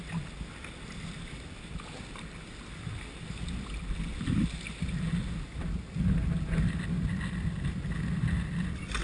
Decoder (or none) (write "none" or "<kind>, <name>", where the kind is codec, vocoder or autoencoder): none